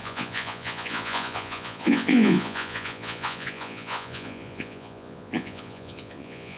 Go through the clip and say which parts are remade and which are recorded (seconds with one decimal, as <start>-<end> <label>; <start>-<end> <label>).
0.0-6.6 remade